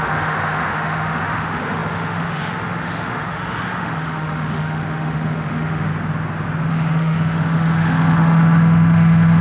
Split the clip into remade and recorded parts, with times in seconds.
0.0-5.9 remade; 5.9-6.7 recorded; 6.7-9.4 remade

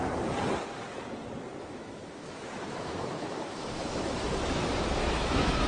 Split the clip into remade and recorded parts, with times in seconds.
0.0-1.6 recorded; 1.6-5.7 remade

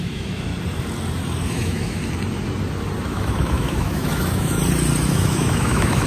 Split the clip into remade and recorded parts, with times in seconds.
0.0-0.5 remade; 0.5-1.5 recorded; 1.5-2.0 remade; 2.0-3.0 recorded; 3.0-4.6 remade; 4.6-5.1 recorded; 5.1-6.1 remade

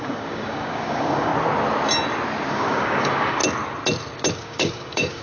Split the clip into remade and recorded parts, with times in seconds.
0.0-1.3 remade; 1.3-2.5 recorded; 2.5-3.4 remade; 3.4-4.3 recorded; 4.3-5.2 remade

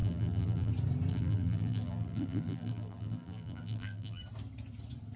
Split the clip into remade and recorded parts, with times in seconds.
0.0-0.7 remade; 0.7-1.1 recorded; 1.1-4.2 remade; 4.2-5.2 recorded